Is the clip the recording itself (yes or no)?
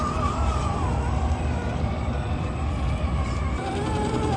yes